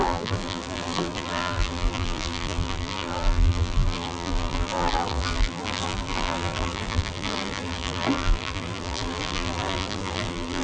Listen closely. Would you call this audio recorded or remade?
remade